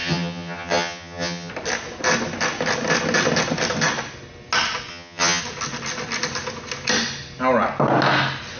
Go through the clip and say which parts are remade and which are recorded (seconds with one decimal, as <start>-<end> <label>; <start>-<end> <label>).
0.0-1.5 remade; 1.5-4.9 recorded; 4.9-5.4 remade; 5.4-8.6 recorded